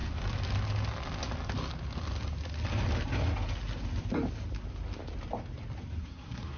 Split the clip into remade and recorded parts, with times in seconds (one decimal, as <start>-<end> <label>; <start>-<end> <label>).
0.0-6.0 recorded; 6.0-6.6 remade